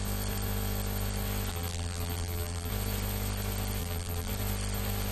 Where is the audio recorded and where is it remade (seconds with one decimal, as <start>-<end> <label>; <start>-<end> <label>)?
0.0-1.5 recorded; 1.5-2.7 remade; 2.7-3.8 recorded; 3.8-4.3 remade; 4.3-5.1 recorded